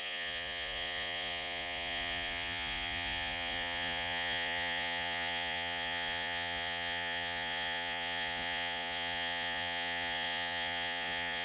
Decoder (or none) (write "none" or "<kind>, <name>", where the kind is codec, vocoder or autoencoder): vocoder, Vocos